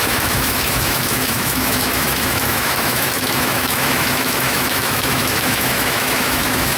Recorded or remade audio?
remade